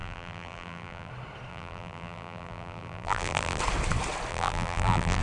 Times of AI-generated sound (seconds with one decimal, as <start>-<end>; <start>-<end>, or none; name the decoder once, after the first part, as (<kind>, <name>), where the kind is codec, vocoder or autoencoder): 0.0-1.1 (vocoder, BigVGAN v2); 1.5-3.6; 4.3-5.2